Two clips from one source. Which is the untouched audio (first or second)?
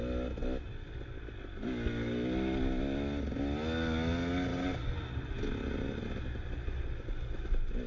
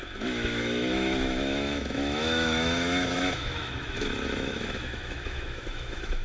first